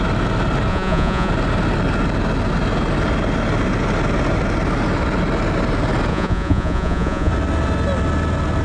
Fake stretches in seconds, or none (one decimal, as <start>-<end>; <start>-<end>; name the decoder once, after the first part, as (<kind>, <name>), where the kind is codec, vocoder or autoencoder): 0.7-1.3 (vocoder, Vocos); 6.1-7.3